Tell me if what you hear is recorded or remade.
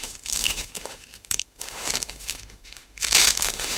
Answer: remade